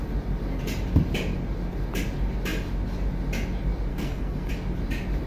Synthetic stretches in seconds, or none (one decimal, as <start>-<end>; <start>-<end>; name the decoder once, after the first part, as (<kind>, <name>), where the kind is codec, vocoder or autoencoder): 3.9-4.5 (codec, SNAC)